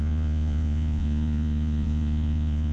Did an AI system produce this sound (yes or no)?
yes